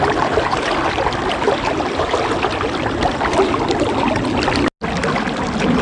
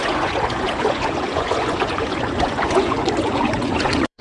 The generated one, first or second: second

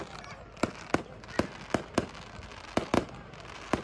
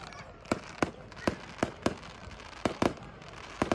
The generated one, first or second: second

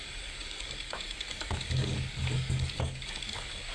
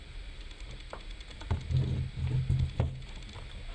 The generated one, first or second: first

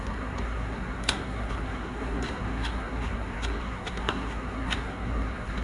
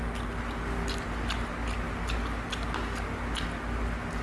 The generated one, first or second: first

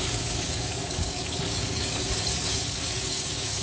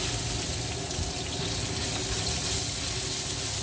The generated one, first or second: first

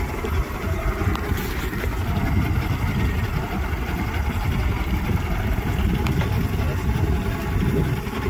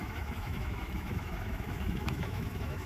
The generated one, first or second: second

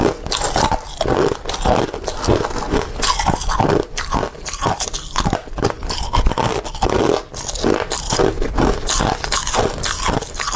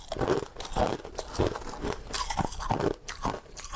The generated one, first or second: second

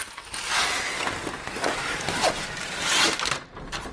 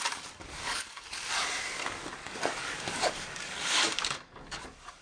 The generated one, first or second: second